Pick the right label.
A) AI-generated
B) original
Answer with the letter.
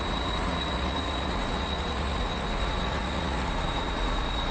A